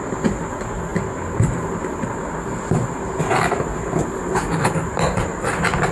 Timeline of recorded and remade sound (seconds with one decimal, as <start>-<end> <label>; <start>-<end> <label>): 0.0-5.9 recorded

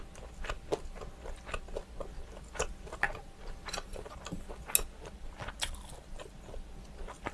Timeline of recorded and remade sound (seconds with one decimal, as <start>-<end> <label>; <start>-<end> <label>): 0.0-7.3 recorded